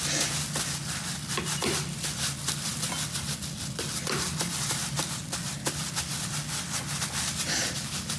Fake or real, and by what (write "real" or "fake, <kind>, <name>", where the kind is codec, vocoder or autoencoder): real